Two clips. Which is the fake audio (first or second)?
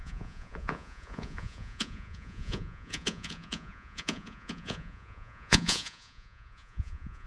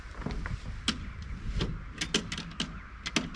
first